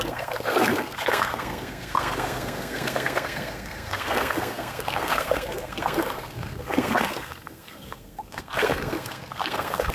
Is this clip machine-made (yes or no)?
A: yes